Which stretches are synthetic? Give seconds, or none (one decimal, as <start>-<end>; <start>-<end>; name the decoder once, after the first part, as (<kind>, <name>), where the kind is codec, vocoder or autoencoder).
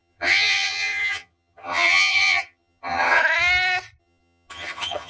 0.0-3.2 (vocoder, HiFi-GAN); 4.0-5.1